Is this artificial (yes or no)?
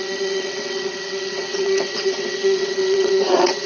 yes